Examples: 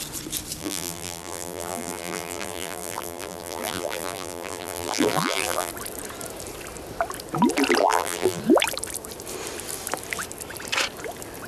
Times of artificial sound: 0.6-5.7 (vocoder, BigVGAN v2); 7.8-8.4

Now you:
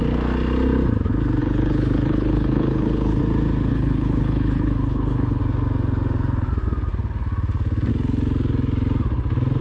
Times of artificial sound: 1.4-3.2 (codec, HILCodec); 3.7-5.4

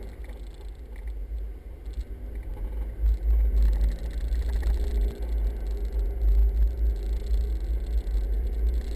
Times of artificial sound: none

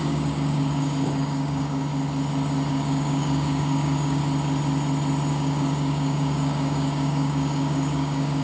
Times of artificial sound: 0.0-1.9 (codec, DAC); 2.7-4.2; 5.3-8.4

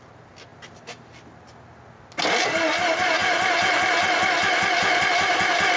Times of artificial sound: none

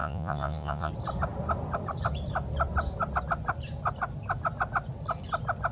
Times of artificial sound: 0.0-0.9 (vocoder, Vocos)